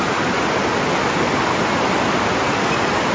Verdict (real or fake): real